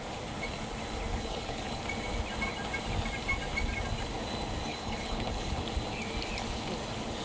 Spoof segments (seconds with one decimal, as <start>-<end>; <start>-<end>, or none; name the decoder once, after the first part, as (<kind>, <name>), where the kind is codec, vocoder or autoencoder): 1.1-1.8 (codec, HILCodec); 4.7-5.6